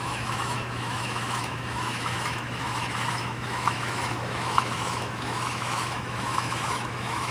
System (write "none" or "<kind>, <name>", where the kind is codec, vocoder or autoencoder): autoencoder, DAC-VAE